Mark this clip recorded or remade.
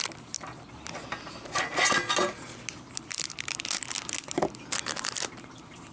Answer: recorded